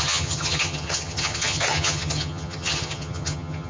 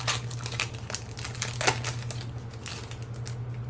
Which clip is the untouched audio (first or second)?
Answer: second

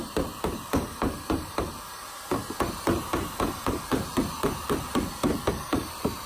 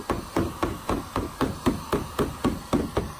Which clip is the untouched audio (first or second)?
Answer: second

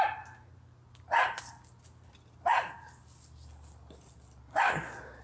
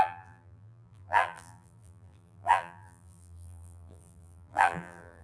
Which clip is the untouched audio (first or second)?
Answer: first